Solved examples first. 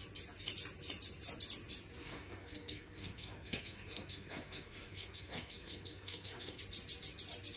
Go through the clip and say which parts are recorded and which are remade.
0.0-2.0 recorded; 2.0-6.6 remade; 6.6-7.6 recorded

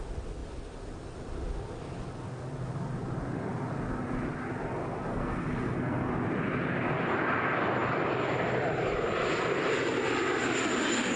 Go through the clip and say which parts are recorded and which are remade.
0.0-5.1 recorded; 5.1-6.1 remade; 6.1-11.2 recorded

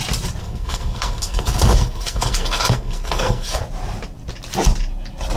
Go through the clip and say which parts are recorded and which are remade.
0.0-0.4 recorded; 0.4-3.6 remade; 3.6-5.4 recorded

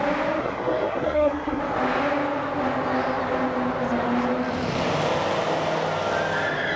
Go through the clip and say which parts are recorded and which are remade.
0.0-0.4 recorded; 0.4-1.6 remade; 1.6-6.8 recorded